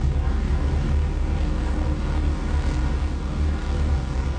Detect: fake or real fake